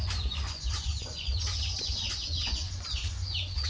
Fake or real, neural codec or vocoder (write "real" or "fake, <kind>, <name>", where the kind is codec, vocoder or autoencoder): fake, vocoder, Vocos